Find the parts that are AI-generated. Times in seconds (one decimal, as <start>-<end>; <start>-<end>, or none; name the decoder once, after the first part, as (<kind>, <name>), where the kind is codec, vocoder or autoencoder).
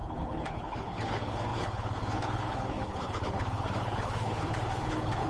0.0-5.3 (codec, HILCodec)